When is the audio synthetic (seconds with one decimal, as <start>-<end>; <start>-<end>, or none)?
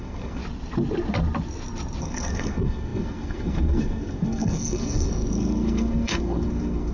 0.0-0.4; 2.0-6.9